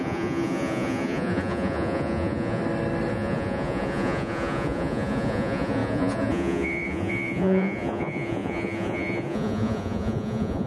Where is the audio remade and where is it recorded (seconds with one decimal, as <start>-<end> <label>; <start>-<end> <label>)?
0.0-2.6 remade; 2.6-3.1 recorded; 3.1-10.7 remade